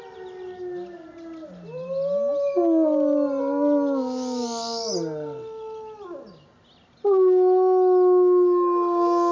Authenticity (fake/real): real